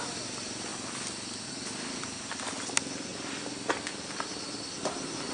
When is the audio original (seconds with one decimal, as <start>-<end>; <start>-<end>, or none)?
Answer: 0.0-5.3